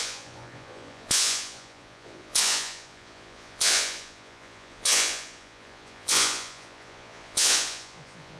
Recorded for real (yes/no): no